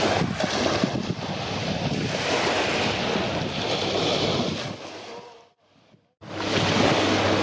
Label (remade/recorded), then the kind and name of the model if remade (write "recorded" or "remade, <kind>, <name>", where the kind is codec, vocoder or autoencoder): recorded